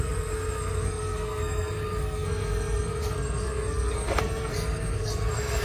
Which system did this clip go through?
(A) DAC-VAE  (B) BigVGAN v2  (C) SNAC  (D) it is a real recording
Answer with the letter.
C